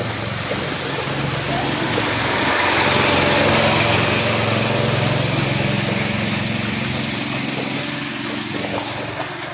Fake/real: real